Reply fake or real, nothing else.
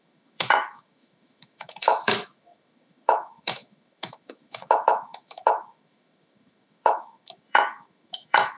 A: fake